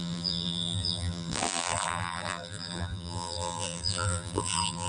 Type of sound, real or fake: fake